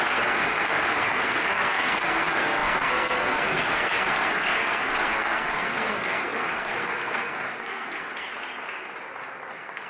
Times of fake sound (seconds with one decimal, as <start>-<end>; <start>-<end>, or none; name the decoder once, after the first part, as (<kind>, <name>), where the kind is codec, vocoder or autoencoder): 0.0-8.3 (codec, SNAC); 9.5-9.9